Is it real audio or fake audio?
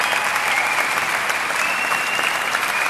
real